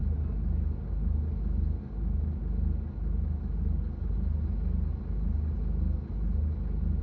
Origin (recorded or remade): recorded